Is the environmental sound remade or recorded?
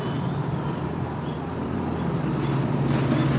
recorded